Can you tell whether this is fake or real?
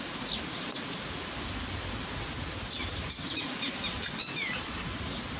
real